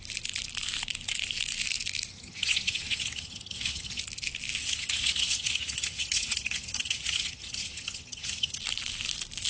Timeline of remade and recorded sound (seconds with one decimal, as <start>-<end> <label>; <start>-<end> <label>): 0.0-2.1 recorded; 2.1-4.0 remade; 4.0-4.6 recorded; 4.6-8.6 remade; 8.6-9.5 recorded